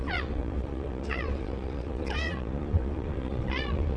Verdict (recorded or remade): remade